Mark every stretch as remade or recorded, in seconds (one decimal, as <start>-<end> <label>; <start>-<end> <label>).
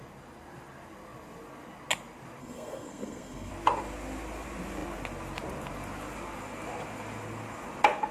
0.0-2.4 recorded; 2.4-3.5 remade; 3.5-8.1 recorded